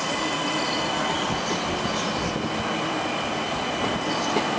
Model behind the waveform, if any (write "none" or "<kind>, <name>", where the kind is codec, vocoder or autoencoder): none